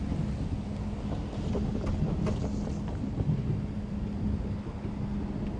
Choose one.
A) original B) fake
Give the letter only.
A